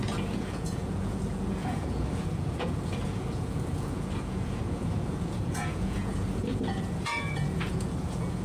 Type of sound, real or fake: fake